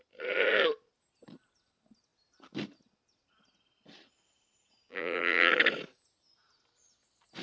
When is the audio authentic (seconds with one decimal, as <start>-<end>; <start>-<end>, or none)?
0.0-4.9; 5.5-7.4